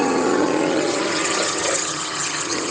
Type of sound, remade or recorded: remade